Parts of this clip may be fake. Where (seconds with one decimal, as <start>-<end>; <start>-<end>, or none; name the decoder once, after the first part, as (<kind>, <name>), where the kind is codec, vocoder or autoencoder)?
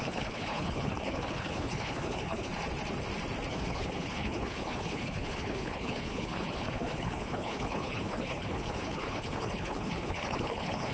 0.0-2.5 (codec, HILCodec); 3.5-10.9